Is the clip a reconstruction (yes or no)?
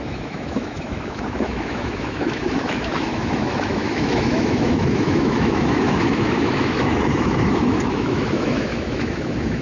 yes